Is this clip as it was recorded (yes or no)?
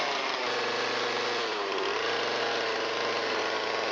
yes